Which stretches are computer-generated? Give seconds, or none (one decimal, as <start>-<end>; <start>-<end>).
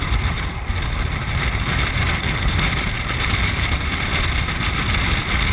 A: 0.7-4.0